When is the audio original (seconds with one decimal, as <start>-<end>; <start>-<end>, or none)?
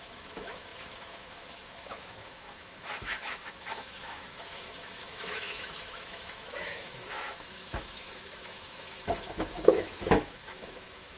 none